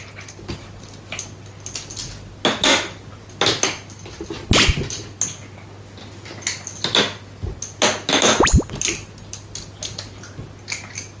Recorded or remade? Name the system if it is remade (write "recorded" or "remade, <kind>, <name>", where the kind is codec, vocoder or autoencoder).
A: recorded